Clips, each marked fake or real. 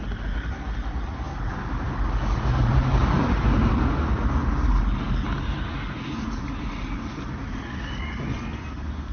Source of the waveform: real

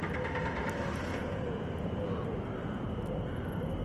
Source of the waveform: real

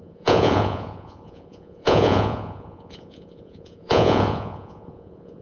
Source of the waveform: fake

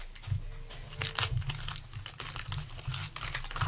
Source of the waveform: real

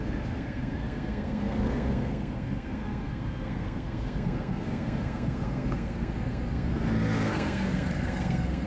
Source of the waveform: fake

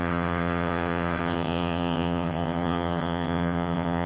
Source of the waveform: fake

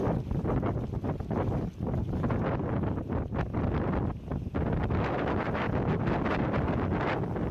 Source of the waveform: real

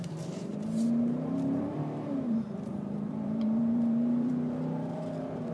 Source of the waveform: fake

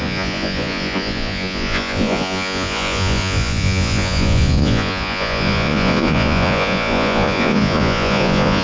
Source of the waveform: fake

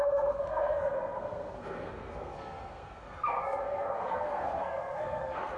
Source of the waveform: fake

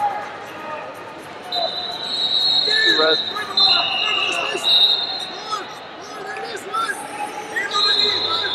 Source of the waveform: fake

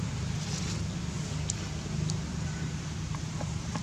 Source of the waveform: real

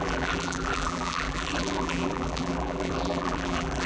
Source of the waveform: fake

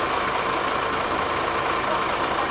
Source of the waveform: real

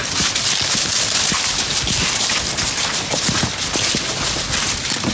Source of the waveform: real